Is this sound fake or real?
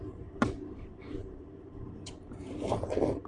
fake